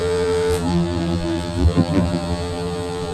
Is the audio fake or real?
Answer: fake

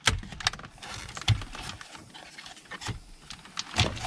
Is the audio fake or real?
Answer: real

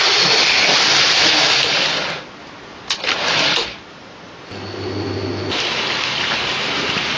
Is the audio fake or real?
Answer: real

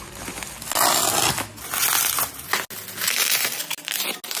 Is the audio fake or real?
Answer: real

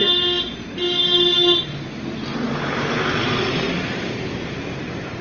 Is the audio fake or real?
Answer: real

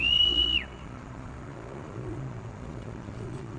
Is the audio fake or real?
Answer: fake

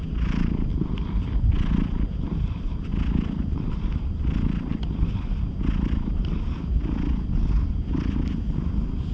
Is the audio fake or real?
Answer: real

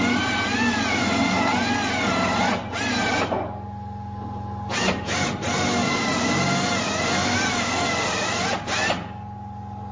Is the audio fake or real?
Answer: real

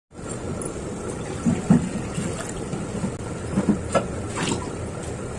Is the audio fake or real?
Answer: real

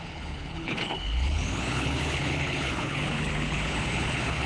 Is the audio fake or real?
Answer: fake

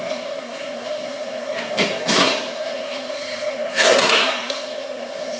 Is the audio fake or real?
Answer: fake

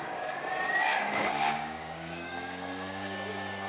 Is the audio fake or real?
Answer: fake